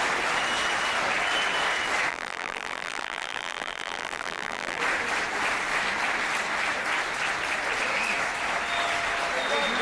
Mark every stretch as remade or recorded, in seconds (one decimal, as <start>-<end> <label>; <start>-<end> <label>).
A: 0.0-2.1 recorded; 2.1-4.8 remade; 4.8-9.8 recorded